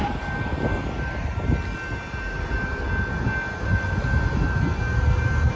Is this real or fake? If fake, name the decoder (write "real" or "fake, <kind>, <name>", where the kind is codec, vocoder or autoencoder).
real